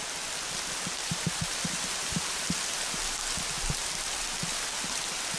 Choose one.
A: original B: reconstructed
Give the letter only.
A